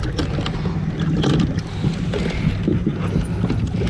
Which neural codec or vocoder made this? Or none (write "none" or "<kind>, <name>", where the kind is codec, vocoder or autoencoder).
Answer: none